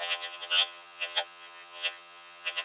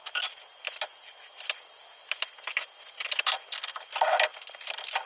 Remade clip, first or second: first